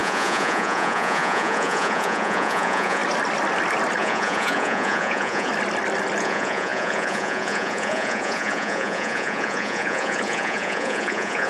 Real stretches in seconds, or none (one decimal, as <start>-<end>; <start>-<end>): 3.0-4.0; 5.5-6.2